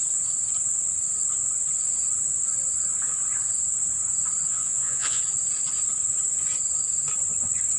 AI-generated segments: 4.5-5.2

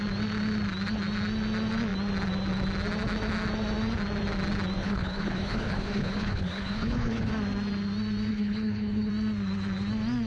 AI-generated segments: 4.8-7.3; 8.3-9.1